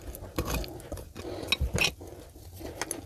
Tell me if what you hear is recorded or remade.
recorded